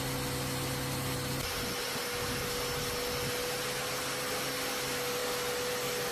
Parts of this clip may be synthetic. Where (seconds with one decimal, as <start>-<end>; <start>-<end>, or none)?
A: none